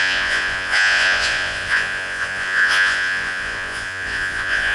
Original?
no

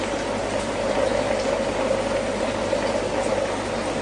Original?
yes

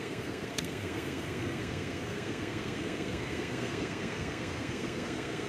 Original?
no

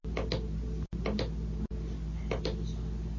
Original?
yes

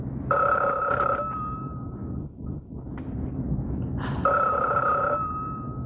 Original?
yes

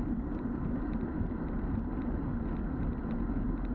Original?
yes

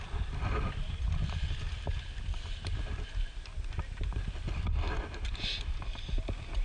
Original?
yes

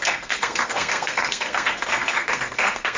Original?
no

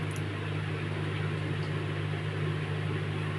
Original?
yes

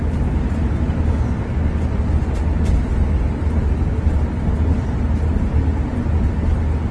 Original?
yes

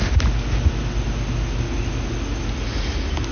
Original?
yes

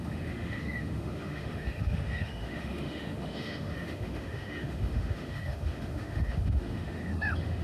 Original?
no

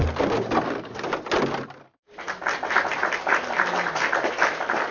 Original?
yes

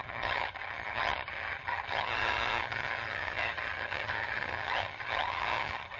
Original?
no